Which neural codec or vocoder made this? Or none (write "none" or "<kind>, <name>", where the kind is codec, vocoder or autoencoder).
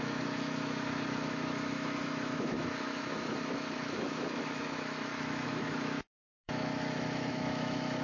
autoencoder, DAC-VAE